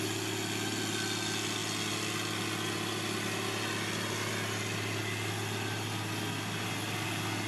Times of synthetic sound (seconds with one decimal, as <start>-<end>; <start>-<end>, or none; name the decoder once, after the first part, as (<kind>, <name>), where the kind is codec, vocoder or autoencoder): none